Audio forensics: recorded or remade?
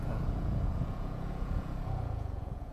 remade